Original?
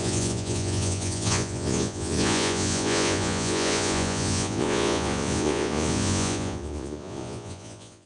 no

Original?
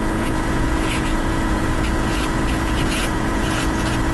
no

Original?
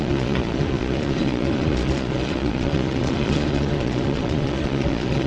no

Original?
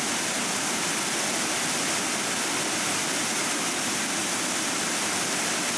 yes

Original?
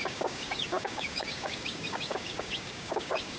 no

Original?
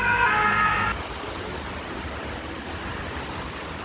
yes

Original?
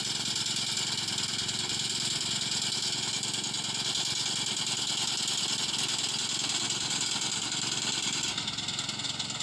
yes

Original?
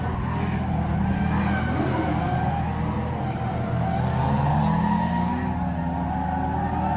yes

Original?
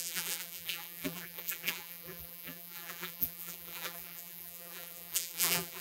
no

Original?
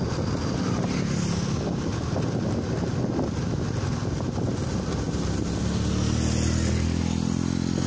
yes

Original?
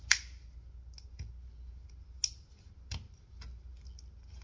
yes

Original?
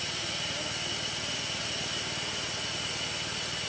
yes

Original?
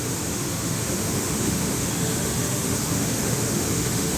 no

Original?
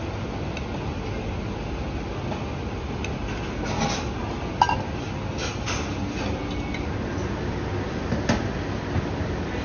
yes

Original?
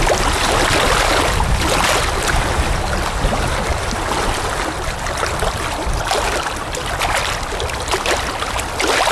yes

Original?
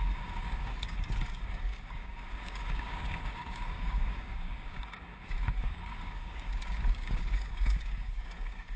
no